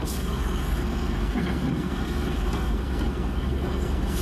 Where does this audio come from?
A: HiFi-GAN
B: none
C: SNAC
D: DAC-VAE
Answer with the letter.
C